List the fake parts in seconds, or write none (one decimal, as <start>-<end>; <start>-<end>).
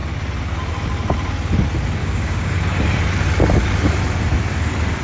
2.0-2.5